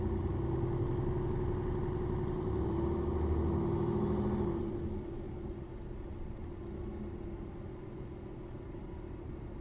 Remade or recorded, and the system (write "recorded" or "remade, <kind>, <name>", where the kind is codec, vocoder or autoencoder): recorded